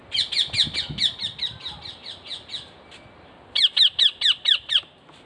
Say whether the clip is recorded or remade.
recorded